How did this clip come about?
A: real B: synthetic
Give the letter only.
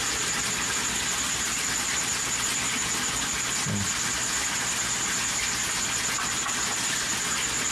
A